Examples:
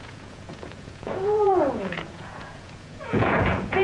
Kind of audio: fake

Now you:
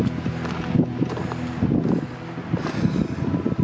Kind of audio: real